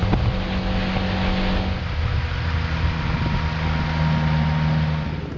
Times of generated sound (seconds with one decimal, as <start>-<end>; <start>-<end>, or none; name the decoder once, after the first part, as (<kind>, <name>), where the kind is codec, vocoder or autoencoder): none